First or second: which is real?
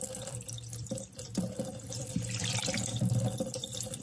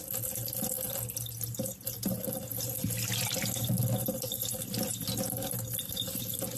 second